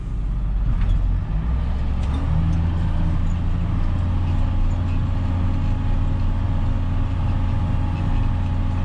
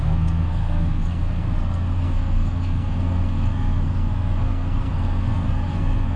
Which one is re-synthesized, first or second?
second